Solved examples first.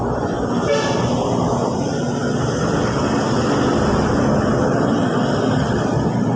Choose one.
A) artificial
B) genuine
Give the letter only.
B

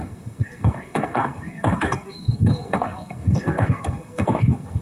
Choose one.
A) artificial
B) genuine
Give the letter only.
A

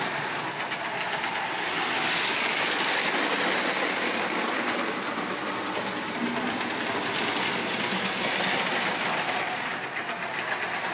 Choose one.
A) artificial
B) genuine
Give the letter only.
B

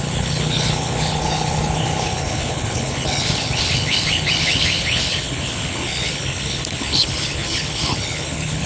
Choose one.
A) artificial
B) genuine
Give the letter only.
A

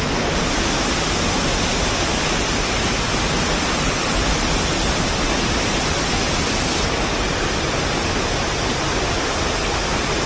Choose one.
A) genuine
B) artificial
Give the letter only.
A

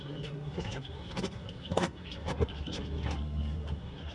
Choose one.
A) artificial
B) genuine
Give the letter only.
A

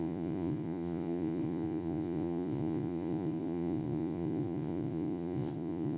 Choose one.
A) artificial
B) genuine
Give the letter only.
A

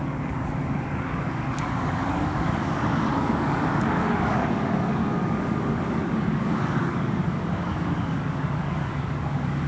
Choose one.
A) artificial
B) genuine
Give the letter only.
A